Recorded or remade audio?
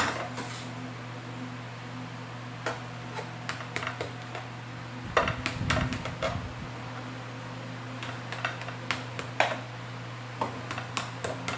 recorded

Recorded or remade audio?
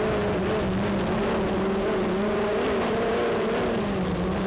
recorded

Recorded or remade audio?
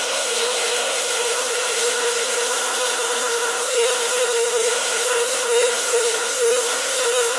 remade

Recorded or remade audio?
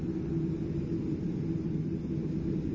recorded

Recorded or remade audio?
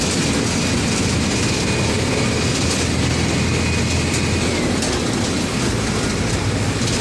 recorded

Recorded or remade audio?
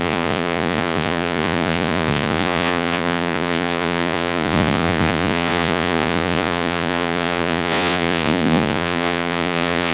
remade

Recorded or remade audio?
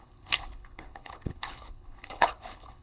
remade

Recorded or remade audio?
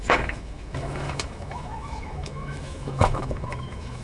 remade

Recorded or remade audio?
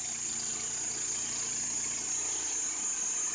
recorded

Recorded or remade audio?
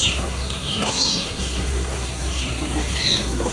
remade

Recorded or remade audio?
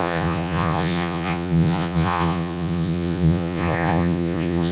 remade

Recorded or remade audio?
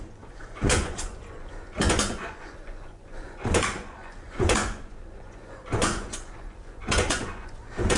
remade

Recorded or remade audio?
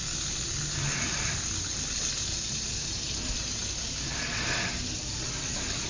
recorded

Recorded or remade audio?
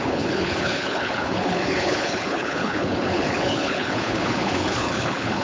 remade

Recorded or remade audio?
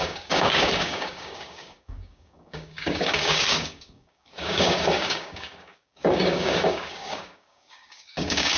remade